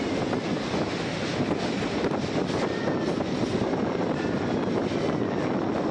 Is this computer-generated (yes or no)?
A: no